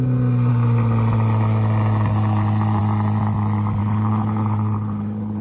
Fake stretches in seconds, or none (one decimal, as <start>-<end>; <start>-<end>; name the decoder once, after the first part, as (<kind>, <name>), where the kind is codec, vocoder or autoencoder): 3.8-5.4 (codec, HILCodec)